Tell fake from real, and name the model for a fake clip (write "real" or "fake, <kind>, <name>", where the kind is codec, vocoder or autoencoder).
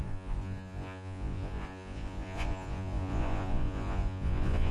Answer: fake, vocoder, Vocos